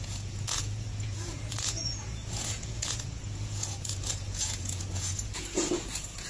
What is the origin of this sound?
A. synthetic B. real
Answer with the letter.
A